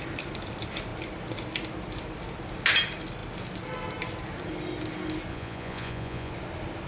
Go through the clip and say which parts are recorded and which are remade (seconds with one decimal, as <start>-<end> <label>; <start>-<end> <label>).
0.0-5.3 recorded; 5.3-6.3 remade; 6.3-6.9 recorded

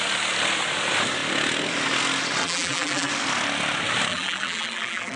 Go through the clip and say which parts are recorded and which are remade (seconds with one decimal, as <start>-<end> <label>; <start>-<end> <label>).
0.0-2.4 recorded; 2.4-3.1 remade; 3.1-4.1 recorded; 4.1-5.2 remade